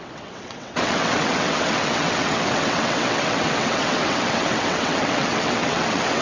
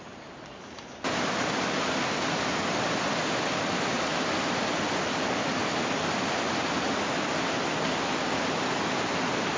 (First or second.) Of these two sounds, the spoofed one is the first